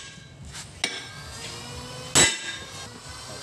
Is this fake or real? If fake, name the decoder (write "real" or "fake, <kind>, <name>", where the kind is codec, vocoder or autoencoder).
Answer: real